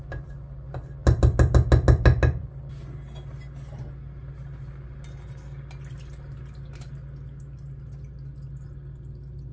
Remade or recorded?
recorded